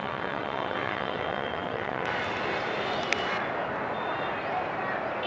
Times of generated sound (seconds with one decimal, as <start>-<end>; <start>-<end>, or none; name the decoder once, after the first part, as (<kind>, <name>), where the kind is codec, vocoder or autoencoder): 0.0-2.1 (vocoder, WaveNeXt)